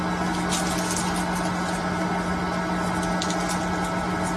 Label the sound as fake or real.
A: real